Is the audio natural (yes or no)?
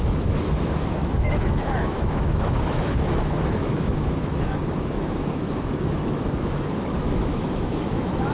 no